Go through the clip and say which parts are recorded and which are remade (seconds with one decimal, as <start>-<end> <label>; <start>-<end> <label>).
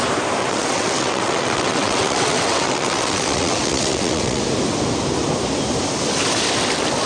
0.0-0.4 recorded; 0.4-4.4 remade; 4.4-7.1 recorded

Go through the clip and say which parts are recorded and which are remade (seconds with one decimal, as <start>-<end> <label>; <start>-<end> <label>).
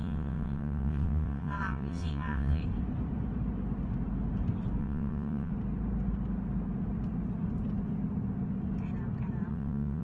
0.0-2.6 remade; 2.6-4.8 recorded; 4.8-5.5 remade; 5.5-9.5 recorded; 9.5-10.0 remade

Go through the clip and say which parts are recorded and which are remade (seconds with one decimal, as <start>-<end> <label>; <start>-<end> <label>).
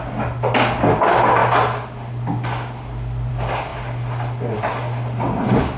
0.0-5.8 recorded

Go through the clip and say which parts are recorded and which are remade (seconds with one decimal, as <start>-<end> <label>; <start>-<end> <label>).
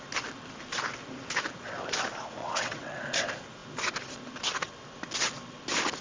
0.0-2.4 recorded; 2.4-3.0 remade; 3.0-6.0 recorded